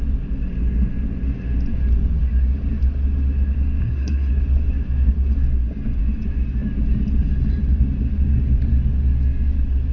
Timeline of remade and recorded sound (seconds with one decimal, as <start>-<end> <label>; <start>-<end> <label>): 0.0-3.8 recorded; 3.8-4.3 remade; 4.3-9.9 recorded

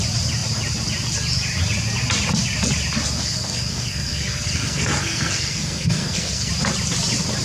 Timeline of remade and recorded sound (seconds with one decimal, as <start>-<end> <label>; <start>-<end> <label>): 0.0-3.2 recorded; 3.2-6.5 remade; 6.5-7.4 recorded

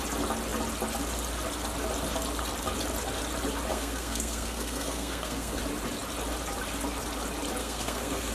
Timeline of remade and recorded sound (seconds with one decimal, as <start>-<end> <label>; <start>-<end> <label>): 0.0-3.7 recorded; 3.7-5.6 remade; 5.6-7.6 recorded; 7.6-8.3 remade

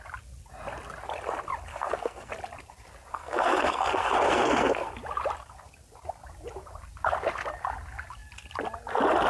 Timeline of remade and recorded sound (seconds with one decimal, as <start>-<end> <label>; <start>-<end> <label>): 0.0-1.7 recorded; 1.7-2.3 remade; 2.3-3.1 recorded; 3.1-4.9 remade; 4.9-9.3 recorded

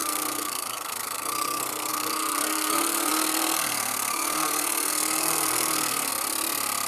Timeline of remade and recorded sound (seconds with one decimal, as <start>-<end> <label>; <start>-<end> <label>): 0.0-6.1 remade; 6.1-6.9 recorded

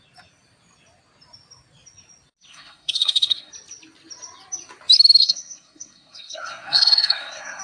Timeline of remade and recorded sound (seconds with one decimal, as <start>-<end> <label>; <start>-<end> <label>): 0.0-2.5 recorded; 2.5-3.5 remade; 3.5-5.2 recorded; 5.2-7.6 remade

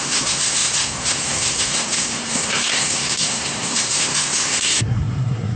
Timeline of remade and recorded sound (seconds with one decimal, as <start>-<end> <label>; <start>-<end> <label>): 0.0-5.6 remade

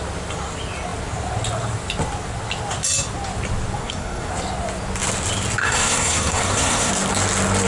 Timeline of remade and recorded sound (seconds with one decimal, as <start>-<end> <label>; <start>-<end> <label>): 0.0-3.8 recorded; 3.8-4.3 remade; 4.3-5.6 recorded; 5.6-6.9 remade; 6.9-7.7 recorded